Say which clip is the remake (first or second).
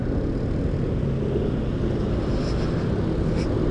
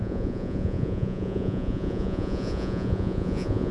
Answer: second